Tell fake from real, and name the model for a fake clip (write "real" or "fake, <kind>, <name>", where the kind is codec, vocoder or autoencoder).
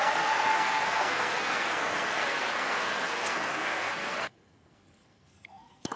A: fake, codec, SNAC